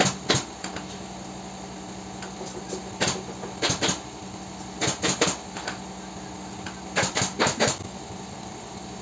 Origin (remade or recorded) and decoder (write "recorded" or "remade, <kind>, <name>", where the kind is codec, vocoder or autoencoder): recorded